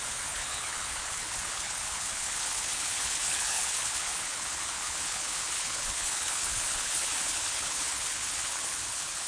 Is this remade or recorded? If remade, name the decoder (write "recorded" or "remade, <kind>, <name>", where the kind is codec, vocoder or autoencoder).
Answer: remade, codec, HILCodec